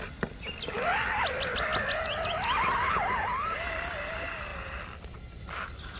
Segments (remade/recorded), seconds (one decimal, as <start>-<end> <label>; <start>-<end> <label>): 0.0-6.0 recorded